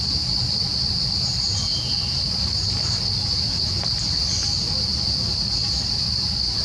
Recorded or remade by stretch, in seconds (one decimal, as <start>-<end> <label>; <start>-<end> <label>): 0.0-6.6 recorded